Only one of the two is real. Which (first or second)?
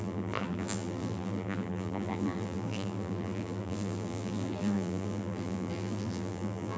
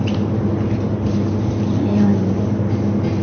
second